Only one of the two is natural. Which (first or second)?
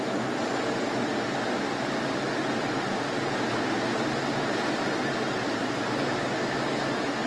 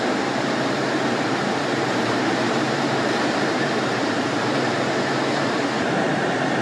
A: first